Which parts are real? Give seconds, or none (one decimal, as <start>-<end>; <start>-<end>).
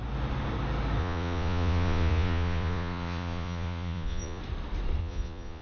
0.0-1.0; 4.4-5.0